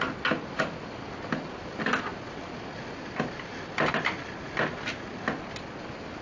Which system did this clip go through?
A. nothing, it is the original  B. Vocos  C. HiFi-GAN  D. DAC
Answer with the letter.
A